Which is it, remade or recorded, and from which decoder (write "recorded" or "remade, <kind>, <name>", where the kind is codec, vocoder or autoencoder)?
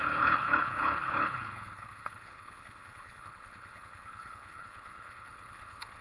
remade, codec, HILCodec